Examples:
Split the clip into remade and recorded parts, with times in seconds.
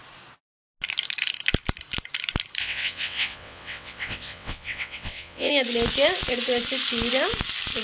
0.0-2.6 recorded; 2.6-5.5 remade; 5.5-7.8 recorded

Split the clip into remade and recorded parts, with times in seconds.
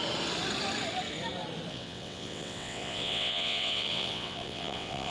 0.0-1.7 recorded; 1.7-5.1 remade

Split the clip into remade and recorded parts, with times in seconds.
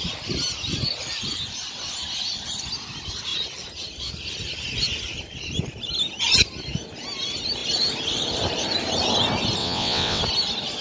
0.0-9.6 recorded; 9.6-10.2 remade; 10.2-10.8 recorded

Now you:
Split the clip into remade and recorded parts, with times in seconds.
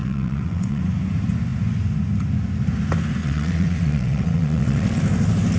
0.0-0.8 remade; 0.8-3.2 recorded; 3.2-5.0 remade; 5.0-5.6 recorded